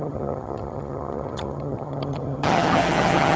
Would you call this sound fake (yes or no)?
yes